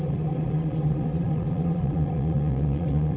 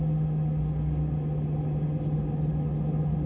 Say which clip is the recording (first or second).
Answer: second